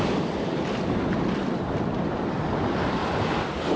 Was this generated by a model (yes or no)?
no